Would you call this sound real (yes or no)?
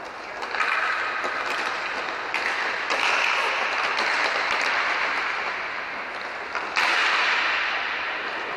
yes